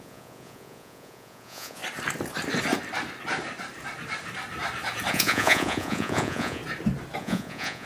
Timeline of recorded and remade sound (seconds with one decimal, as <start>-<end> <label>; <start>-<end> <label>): 0.0-1.8 remade; 1.8-5.1 recorded; 5.1-6.6 remade; 6.6-7.2 recorded; 7.2-7.9 remade